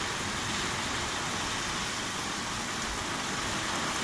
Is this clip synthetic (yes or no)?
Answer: no